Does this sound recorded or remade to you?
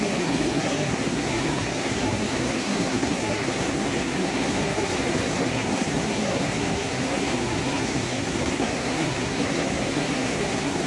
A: remade